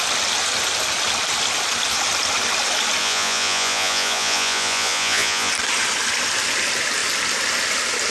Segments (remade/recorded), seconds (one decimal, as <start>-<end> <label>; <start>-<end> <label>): 0.0-3.0 recorded; 3.0-5.5 remade; 5.5-8.1 recorded